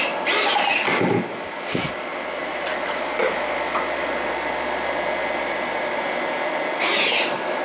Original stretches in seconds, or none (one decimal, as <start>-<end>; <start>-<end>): 0.0-7.6